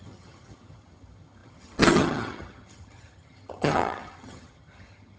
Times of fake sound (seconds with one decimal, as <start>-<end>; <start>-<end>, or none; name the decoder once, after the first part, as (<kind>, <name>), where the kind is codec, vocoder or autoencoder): 0.0-5.2 (vocoder, HiFi-GAN)